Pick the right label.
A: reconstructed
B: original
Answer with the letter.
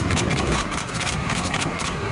A